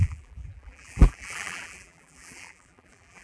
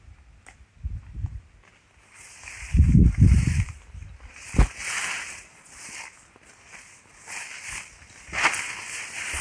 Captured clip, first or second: second